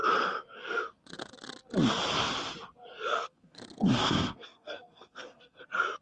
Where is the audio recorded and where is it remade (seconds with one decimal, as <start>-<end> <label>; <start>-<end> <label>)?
0.0-3.1 recorded; 3.1-5.6 remade; 5.6-6.0 recorded